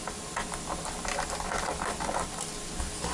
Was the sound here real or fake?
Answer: real